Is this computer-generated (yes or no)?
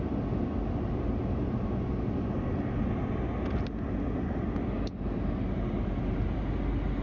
no